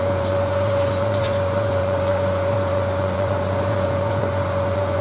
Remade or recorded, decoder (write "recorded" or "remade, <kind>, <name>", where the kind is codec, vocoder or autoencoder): remade, vocoder, Vocos